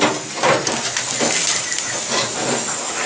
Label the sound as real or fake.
real